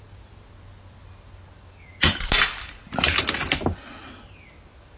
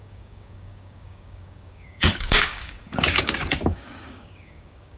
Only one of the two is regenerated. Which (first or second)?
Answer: second